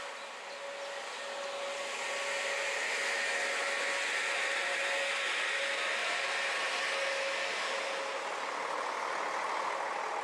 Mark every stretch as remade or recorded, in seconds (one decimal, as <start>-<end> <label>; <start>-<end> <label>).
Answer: 0.0-10.2 recorded